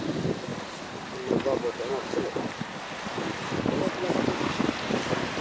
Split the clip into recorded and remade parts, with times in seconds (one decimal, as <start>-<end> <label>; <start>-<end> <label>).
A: 0.0-5.4 recorded